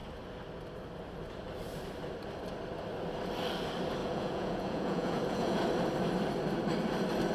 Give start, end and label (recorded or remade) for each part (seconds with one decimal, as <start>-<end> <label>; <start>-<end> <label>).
0.0-4.0 recorded; 4.0-5.6 remade; 5.6-7.3 recorded

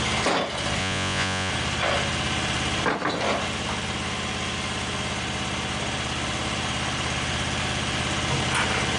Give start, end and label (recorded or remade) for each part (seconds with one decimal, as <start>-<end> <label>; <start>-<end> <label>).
0.0-0.8 recorded; 0.8-1.5 remade; 1.5-9.0 recorded

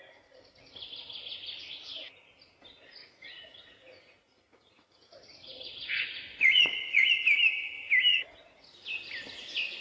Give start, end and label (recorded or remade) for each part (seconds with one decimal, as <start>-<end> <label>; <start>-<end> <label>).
0.0-3.0 recorded; 3.0-7.1 remade; 7.1-8.1 recorded; 8.1-8.8 remade; 8.8-9.8 recorded

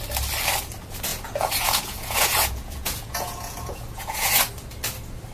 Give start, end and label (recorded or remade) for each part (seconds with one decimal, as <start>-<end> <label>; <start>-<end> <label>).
0.0-1.1 recorded; 1.1-4.3 remade; 4.3-5.3 recorded

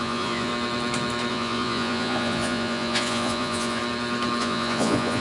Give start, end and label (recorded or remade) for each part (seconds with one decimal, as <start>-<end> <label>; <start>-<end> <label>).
0.0-0.5 remade; 0.5-1.3 recorded; 1.3-3.8 remade; 3.8-4.4 recorded; 4.4-5.2 remade